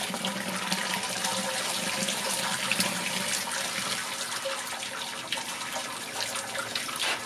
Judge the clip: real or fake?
real